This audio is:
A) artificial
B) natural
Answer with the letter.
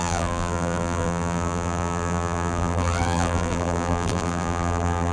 A